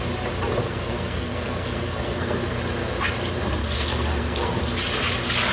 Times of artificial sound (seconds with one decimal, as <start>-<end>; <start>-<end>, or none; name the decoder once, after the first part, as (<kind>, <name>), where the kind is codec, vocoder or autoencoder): 0.6-2.6 (codec, SNAC); 3.6-4.6